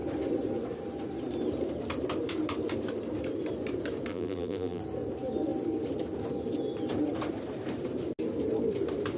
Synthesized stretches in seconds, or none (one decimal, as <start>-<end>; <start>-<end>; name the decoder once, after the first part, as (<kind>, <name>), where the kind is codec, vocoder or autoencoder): 4.1-4.8 (vocoder, BigVGAN v2)